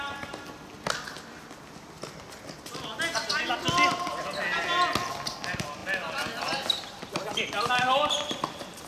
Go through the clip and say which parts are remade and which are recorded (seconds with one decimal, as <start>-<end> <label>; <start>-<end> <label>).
0.0-8.9 recorded